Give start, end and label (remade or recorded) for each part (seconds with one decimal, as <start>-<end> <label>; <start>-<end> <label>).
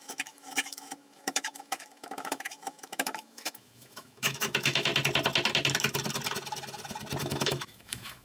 0.0-4.9 remade; 4.9-7.2 recorded; 7.2-8.2 remade